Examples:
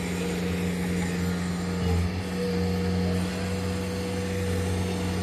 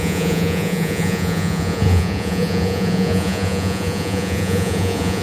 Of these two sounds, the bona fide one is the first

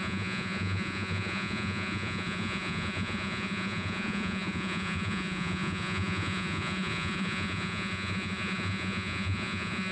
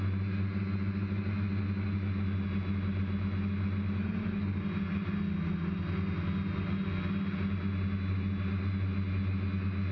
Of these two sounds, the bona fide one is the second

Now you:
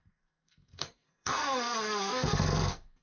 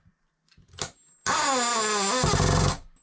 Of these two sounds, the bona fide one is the second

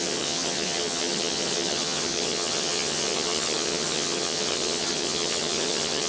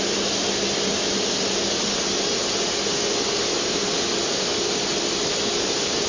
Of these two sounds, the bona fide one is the second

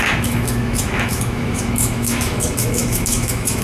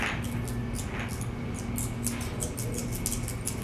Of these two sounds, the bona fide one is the second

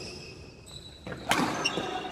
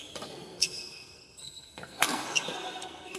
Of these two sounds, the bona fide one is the first